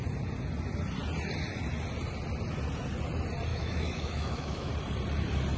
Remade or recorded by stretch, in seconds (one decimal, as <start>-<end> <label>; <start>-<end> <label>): 0.0-3.5 recorded; 3.5-4.7 remade; 4.7-5.6 recorded